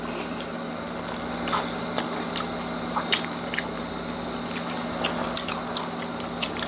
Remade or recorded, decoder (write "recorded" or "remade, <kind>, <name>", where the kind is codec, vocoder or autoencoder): recorded